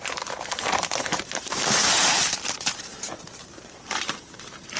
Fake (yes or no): yes